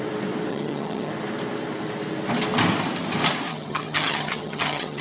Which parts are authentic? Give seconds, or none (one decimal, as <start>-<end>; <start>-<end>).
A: 0.0-0.5; 1.1-3.5